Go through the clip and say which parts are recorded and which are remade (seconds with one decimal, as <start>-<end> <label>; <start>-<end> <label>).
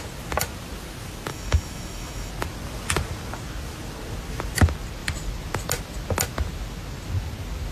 0.0-1.3 recorded; 1.3-2.3 remade; 2.3-7.7 recorded